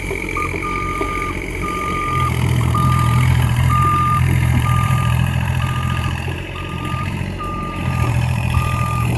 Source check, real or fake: fake